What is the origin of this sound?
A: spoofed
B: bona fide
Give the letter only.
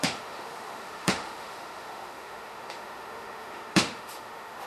A